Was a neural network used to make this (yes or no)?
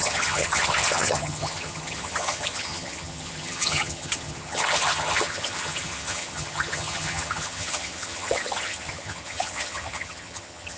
yes